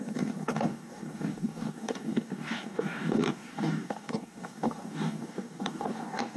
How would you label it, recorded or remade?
remade